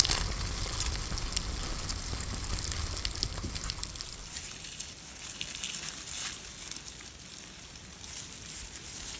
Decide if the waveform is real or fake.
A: real